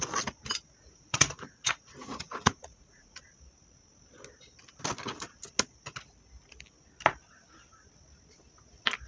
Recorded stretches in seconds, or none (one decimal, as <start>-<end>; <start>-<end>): 0.0-0.8; 3.2-9.1